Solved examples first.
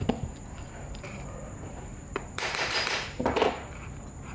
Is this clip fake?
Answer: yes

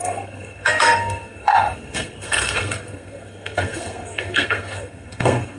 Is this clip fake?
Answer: yes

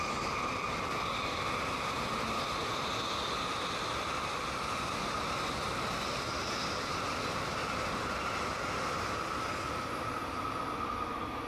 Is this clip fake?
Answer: no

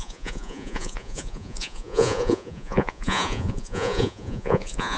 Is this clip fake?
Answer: yes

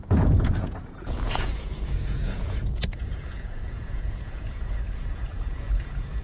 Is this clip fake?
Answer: yes